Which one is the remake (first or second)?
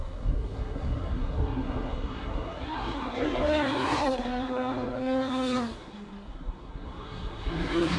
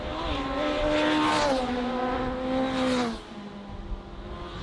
first